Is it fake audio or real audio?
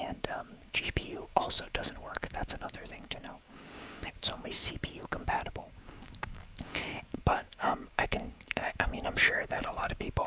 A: fake